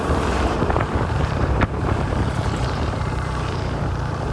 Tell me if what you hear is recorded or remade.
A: remade